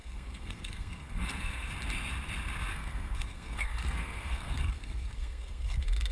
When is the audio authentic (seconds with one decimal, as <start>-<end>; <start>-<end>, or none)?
1.7-2.7